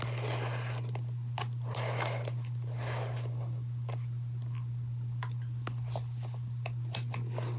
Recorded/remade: recorded